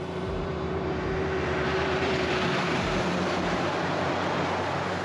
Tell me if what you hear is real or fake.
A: fake